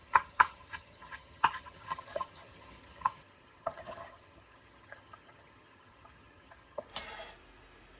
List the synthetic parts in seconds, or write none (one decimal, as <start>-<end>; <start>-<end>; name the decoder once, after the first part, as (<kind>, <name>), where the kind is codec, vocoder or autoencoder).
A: 0.0-6.9 (vocoder, HiFi-GAN)